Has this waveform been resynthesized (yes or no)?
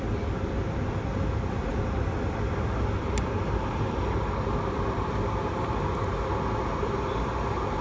no